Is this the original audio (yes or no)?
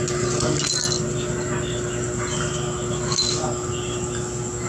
yes